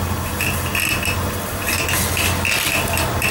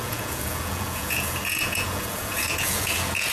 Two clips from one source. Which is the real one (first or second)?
first